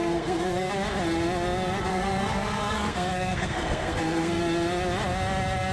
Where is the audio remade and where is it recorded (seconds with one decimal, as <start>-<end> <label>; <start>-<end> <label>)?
0.0-0.7 remade; 0.7-1.9 recorded; 1.9-4.4 remade; 4.4-5.7 recorded